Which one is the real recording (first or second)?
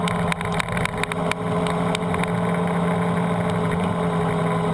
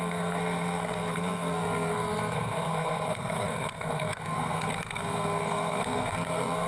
first